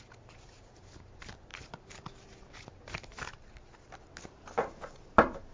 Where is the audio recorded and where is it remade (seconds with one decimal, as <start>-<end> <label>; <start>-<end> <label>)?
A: 0.0-5.5 recorded

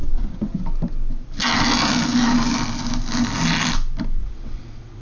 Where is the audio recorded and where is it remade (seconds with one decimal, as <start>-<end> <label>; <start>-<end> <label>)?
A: 0.0-0.6 remade; 0.6-4.2 recorded; 4.2-5.0 remade

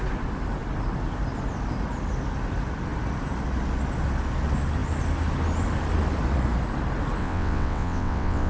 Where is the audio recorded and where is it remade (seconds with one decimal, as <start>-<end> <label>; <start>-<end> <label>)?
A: 0.0-7.2 recorded; 7.2-8.5 remade

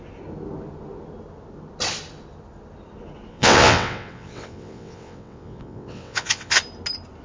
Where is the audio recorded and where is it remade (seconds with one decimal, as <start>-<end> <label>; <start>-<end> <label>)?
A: 0.0-3.3 recorded; 3.3-6.6 remade; 6.6-7.2 recorded

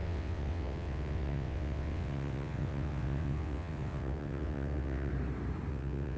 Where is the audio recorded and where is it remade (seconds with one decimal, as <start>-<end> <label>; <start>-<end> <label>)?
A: 0.0-5.1 remade; 5.1-5.7 recorded; 5.7-6.2 remade

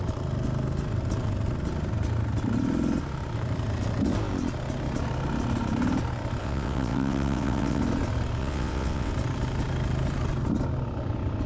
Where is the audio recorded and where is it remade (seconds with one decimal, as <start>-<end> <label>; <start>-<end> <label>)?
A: 0.0-6.4 recorded; 6.4-7.8 remade; 7.8-8.4 recorded; 8.4-9.1 remade; 9.1-11.5 recorded

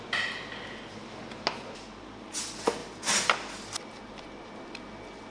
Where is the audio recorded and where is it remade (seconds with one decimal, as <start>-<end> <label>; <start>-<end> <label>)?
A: 0.0-5.3 recorded